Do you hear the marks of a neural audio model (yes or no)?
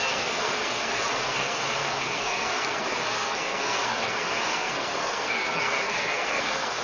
yes